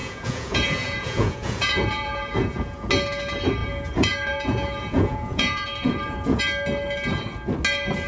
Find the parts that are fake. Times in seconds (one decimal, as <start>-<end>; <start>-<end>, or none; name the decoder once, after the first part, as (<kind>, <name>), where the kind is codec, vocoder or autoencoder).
0.0-2.9 (vocoder, Vocos); 3.6-6.4

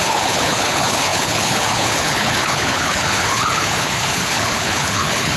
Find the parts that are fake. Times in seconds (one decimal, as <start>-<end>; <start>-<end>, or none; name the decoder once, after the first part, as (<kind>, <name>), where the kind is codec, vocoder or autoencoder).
0.0-5.4 (codec, HILCodec)

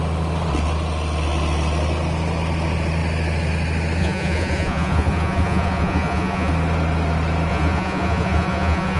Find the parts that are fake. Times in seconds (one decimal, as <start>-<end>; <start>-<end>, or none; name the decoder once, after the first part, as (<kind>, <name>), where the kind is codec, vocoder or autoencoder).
4.0-6.5 (vocoder, Vocos); 7.5-9.0

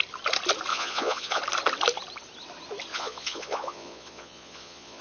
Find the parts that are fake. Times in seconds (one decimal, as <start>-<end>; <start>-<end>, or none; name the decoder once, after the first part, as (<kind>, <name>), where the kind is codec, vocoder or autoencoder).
0.7-1.4 (vocoder, Vocos); 2.9-5.0

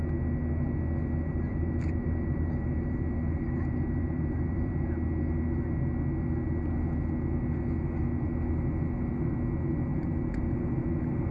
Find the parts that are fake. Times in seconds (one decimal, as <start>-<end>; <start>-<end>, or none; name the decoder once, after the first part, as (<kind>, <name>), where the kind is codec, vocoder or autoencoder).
1.3-4.7 (vocoder, BigVGAN v2); 9.9-10.4

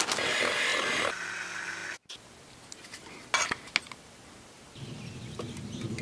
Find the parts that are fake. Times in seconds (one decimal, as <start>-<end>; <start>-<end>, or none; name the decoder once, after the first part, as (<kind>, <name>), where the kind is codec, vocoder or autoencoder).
none

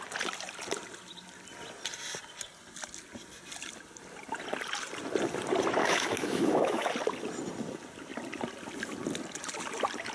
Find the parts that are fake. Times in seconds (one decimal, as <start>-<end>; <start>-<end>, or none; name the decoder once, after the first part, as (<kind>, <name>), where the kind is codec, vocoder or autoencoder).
5.8-6.9 (autoencoder, DAC-VAE)

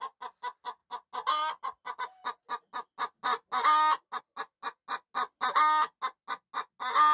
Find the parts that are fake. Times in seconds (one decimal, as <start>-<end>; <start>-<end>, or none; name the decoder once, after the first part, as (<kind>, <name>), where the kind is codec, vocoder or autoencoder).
none